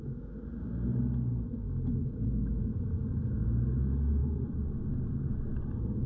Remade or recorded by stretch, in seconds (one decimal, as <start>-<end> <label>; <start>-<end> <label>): 0.0-2.0 recorded; 2.0-2.6 remade; 2.6-6.1 recorded